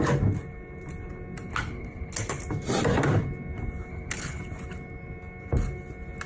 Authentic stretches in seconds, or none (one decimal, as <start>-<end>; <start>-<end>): 0.0-1.5; 2.4-3.9; 4.4-6.3